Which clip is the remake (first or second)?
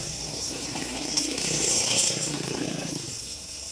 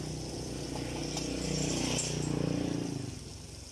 first